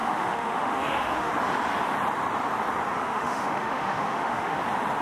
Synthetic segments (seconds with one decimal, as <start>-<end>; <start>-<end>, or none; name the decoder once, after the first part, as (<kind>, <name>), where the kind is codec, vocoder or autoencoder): 0.0-1.3 (autoencoder, DAC-VAE); 3.0-4.6